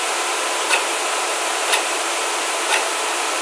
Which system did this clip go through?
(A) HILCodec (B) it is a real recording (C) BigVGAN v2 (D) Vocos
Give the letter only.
C